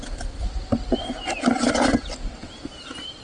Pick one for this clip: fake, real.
real